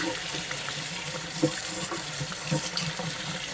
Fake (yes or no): yes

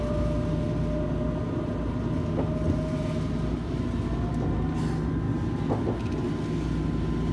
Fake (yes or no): no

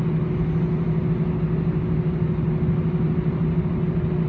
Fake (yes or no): no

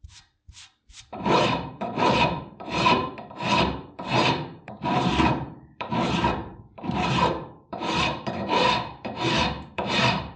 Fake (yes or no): yes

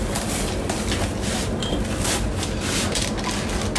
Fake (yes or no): no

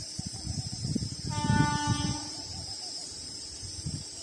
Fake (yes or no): yes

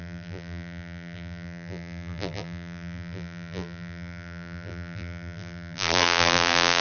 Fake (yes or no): yes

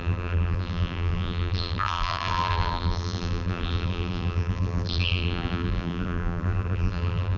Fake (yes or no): yes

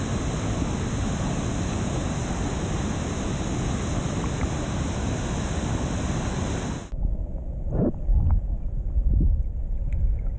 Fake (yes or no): no